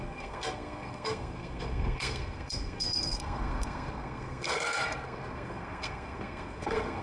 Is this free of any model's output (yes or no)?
no